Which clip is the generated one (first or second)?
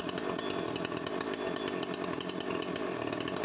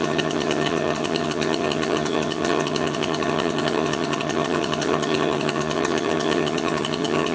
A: second